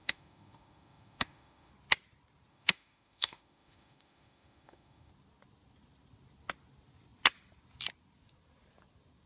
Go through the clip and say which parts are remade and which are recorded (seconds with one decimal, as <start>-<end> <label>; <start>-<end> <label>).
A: 0.0-1.7 remade; 1.7-2.5 recorded; 2.5-5.1 remade; 5.1-9.3 recorded